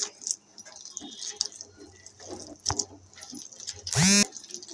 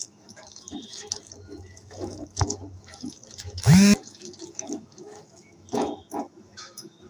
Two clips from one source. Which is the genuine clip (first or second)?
first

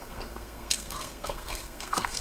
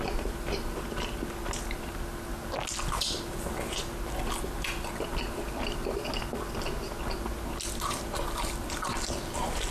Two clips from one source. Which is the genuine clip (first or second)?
second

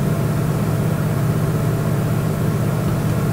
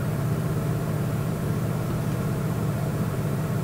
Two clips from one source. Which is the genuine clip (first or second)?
first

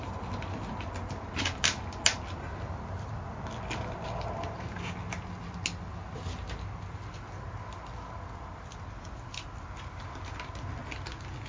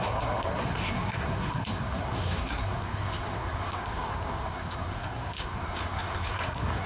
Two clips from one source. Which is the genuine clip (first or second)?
first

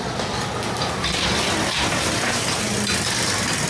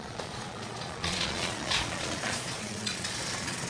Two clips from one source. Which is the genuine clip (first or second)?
first